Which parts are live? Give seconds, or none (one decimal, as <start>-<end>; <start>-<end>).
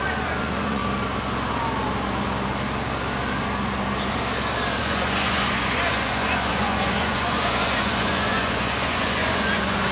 0.8-4.8